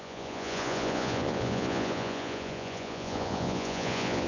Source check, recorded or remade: remade